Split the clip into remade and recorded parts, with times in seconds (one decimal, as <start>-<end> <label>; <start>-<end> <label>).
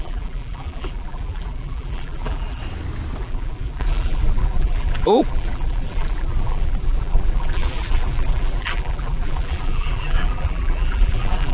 0.0-2.6 remade; 2.6-3.2 recorded; 3.2-11.5 remade